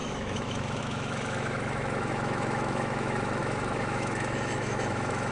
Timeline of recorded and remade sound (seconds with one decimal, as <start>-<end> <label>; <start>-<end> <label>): 0.0-5.3 remade